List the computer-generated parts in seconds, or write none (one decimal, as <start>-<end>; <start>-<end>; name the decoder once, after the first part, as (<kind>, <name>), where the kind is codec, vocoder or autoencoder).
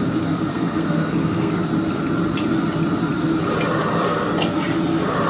0.5-1.5 (codec, SNAC)